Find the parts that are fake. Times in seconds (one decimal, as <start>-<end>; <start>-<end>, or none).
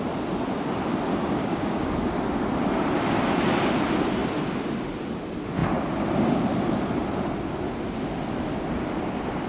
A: 1.1-1.8